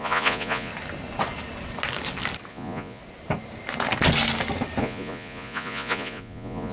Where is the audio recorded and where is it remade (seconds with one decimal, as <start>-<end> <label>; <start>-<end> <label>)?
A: 0.0-0.7 remade; 0.7-2.5 recorded; 2.5-3.0 remade; 3.0-4.8 recorded; 4.8-6.7 remade